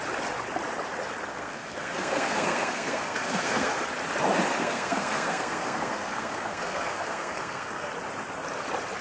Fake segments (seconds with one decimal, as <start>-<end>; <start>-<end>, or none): 1.3-3.7; 4.6-7.9